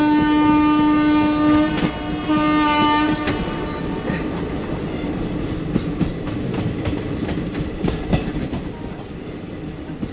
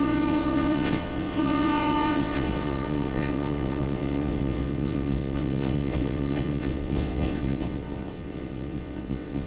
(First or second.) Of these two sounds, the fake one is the second